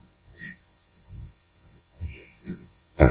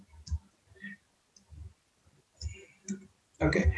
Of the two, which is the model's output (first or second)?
first